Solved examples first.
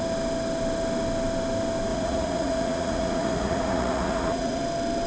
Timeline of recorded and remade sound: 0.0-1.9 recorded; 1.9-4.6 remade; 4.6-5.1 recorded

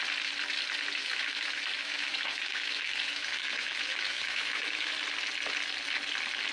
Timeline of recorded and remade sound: 0.0-1.0 recorded; 1.0-4.9 remade; 4.9-6.5 recorded

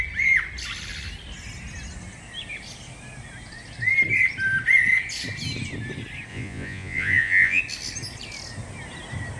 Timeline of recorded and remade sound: 0.0-6.3 recorded; 6.3-7.6 remade; 7.6-9.4 recorded

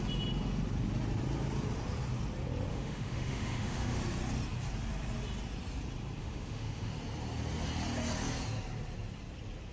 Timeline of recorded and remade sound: 0.0-2.7 recorded; 2.7-4.0 remade; 4.0-6.2 recorded; 6.2-6.9 remade; 6.9-9.7 recorded

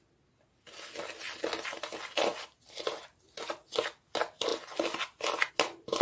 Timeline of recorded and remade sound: 0.0-6.0 recorded

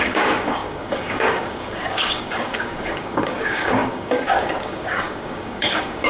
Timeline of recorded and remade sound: 0.0-6.1 remade